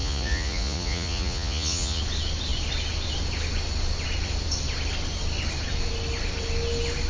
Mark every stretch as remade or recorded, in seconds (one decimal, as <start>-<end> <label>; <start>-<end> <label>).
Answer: 0.0-2.0 remade; 2.0-7.1 recorded